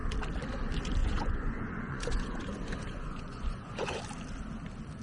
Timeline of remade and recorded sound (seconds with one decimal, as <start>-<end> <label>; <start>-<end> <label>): 0.0-1.0 recorded; 1.0-4.0 remade; 4.0-5.0 recorded